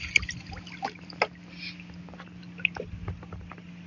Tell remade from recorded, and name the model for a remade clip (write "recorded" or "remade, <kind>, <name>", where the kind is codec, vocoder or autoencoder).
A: recorded